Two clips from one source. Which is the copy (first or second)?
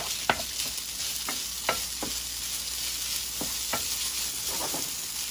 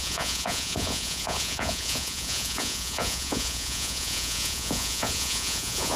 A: second